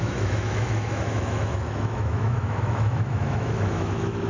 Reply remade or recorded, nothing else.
remade